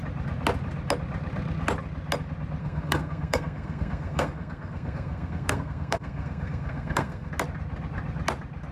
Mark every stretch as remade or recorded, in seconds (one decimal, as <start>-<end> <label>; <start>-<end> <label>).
0.0-2.6 recorded; 2.6-7.3 remade; 7.3-8.7 recorded